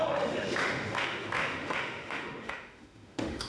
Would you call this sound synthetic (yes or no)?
yes